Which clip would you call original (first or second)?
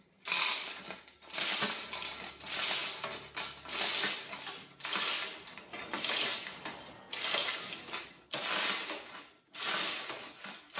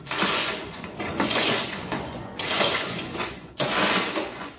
first